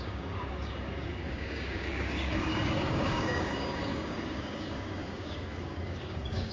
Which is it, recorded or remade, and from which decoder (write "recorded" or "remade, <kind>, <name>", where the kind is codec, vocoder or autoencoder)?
remade, codec, DAC